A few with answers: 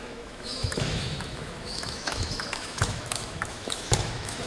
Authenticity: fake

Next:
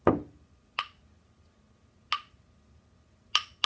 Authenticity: real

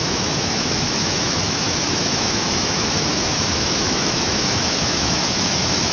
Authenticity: fake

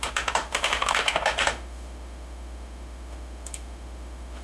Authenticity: fake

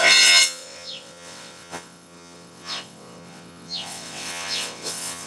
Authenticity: fake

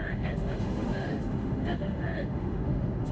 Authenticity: fake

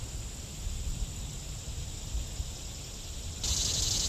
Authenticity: real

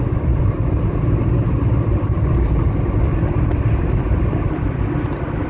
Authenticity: real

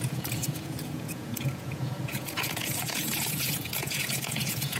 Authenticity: fake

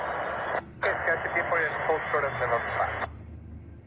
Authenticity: real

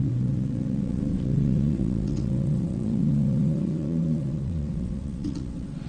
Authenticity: fake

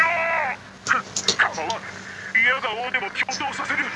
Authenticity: real